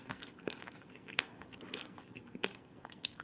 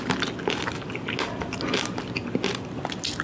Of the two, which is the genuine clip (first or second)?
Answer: second